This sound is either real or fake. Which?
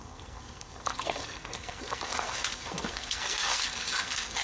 fake